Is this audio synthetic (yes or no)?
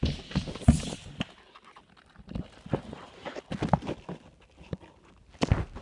no